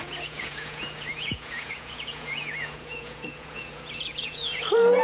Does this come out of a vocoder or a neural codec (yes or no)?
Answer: yes